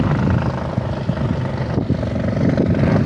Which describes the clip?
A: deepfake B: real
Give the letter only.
B